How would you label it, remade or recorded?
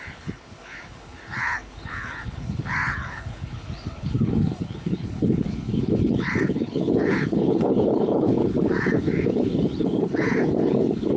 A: remade